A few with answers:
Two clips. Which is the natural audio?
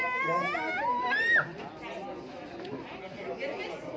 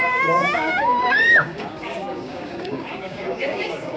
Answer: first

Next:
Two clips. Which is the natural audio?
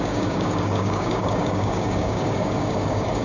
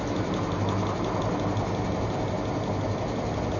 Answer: second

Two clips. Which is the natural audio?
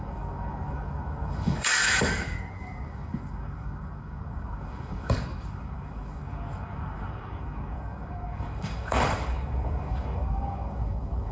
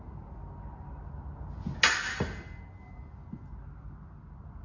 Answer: second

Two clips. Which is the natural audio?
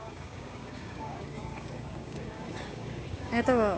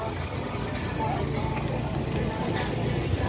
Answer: second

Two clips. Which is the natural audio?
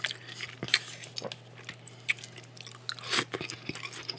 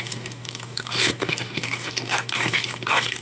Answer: first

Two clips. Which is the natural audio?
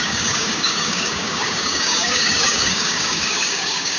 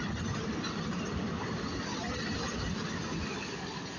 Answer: second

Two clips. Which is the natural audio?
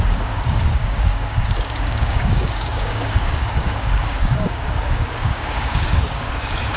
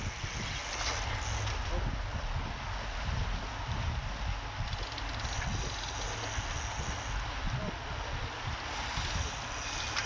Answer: second